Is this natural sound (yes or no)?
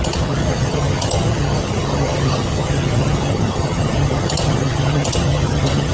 no